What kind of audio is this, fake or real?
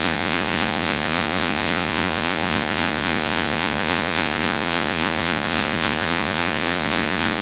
fake